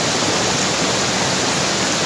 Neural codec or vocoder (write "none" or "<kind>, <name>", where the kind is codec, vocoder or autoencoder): none